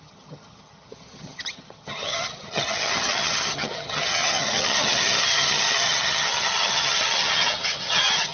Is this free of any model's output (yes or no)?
no